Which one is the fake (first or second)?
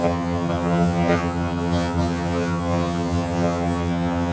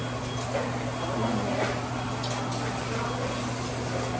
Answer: first